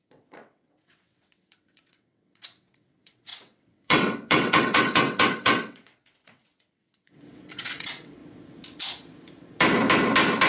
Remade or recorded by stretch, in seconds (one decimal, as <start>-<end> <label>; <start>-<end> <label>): 0.0-8.2 remade; 8.2-10.5 recorded